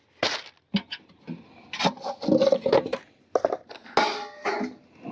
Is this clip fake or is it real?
real